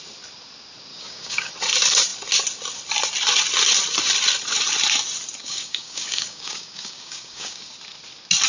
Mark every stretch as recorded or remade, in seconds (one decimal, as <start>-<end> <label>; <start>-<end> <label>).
0.0-0.9 recorded; 0.9-1.5 remade; 1.5-5.4 recorded; 5.4-7.7 remade; 7.7-8.5 recorded